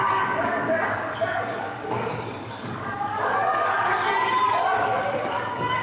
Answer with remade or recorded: remade